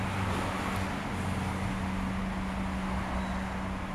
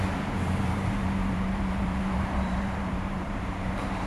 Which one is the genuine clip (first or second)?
first